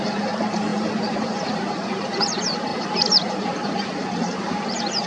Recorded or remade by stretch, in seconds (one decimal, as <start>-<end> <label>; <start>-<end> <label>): 0.0-5.1 remade